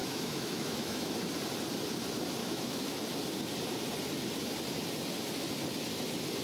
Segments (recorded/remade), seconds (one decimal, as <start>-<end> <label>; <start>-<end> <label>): 0.0-1.1 remade; 1.1-2.4 recorded; 2.4-3.0 remade; 3.0-6.4 recorded